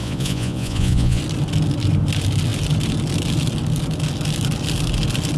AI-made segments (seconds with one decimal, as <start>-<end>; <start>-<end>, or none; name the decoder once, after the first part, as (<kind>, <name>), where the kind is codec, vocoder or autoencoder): 0.0-1.2 (vocoder, Vocos)